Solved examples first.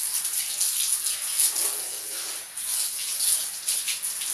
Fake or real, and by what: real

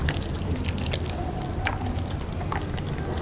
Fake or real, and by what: real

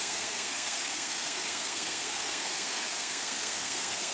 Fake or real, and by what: fake, codec, SNAC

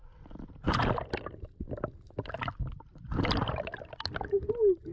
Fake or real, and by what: real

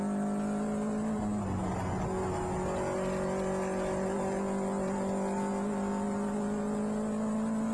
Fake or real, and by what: real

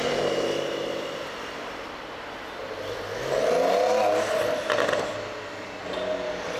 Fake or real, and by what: real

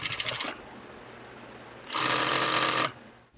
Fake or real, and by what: real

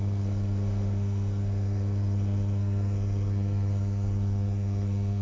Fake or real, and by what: fake, codec, SNAC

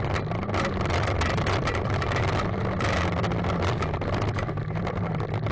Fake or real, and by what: real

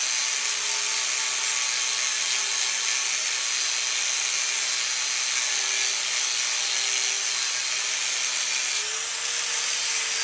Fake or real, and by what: real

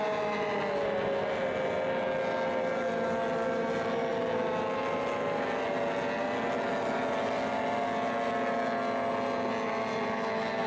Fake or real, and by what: real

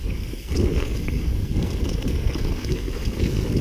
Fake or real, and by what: fake, codec, SNAC